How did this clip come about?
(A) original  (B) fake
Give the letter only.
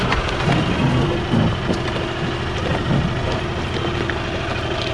A